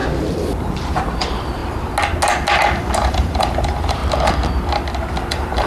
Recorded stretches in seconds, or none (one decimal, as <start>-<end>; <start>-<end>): 0.0-0.6; 1.6-3.1; 4.0-5.3